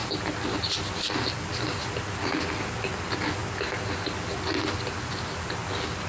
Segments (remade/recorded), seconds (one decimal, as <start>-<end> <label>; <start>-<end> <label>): 0.0-6.1 recorded